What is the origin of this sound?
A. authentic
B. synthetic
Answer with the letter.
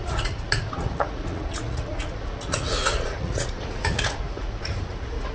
B